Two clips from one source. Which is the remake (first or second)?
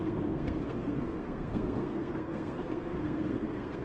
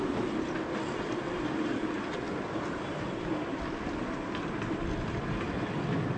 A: first